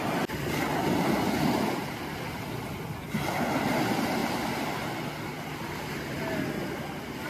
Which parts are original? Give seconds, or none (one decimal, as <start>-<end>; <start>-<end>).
0.0-7.3